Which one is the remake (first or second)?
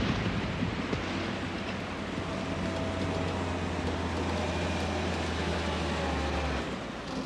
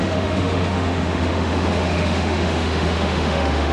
second